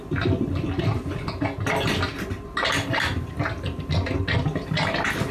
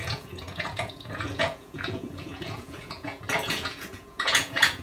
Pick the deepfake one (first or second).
second